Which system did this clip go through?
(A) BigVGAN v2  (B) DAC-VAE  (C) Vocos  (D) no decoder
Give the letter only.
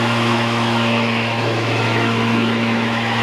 B